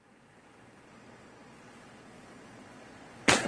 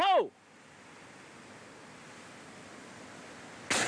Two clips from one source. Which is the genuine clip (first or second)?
second